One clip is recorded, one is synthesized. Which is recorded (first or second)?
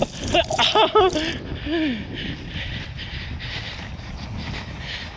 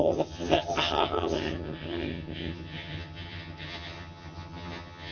first